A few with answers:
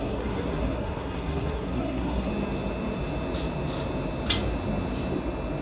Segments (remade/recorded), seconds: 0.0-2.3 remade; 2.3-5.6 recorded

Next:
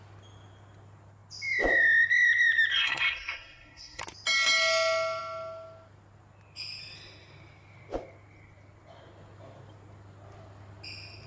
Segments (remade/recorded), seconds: 0.0-2.7 recorded; 2.7-4.0 remade; 4.0-11.3 recorded

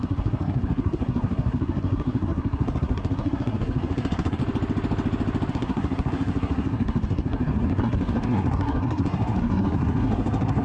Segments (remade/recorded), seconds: 0.0-4.4 remade; 4.4-5.5 recorded; 5.5-10.6 remade

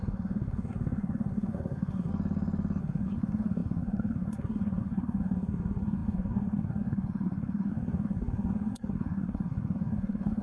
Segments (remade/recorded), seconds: 0.0-2.1 remade; 2.1-2.8 recorded; 2.8-10.4 remade

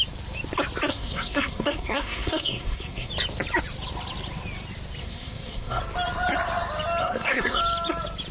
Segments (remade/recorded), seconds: 0.0-0.9 recorded; 0.9-3.1 remade; 3.1-5.0 recorded; 5.0-5.8 remade; 5.8-7.0 recorded; 7.0-7.6 remade; 7.6-8.3 recorded

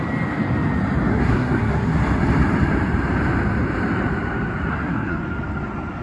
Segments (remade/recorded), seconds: 0.0-1.1 recorded; 1.1-2.0 remade; 2.0-4.7 recorded; 4.7-5.2 remade; 5.2-6.0 recorded

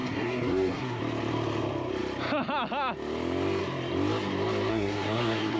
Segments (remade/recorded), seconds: 0.0-1.0 remade; 1.0-4.7 recorded; 4.7-5.6 remade